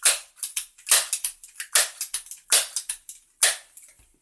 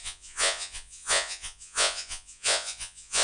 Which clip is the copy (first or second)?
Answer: second